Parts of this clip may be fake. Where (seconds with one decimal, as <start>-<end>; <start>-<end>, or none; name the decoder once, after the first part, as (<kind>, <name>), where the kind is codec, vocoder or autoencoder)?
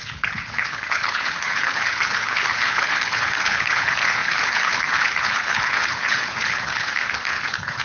0.0-7.8 (codec, HILCodec)